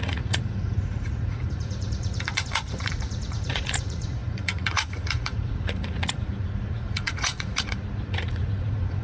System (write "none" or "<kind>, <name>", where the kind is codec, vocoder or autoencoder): vocoder, Vocos